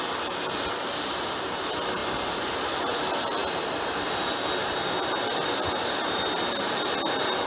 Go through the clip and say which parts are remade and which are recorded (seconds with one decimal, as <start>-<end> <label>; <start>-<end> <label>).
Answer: 0.0-7.5 recorded